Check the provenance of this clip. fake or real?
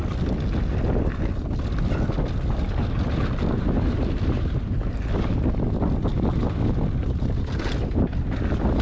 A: real